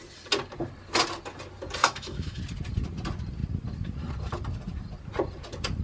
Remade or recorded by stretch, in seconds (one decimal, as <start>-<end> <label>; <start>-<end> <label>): 0.0-1.8 recorded; 1.8-2.4 remade; 2.4-5.8 recorded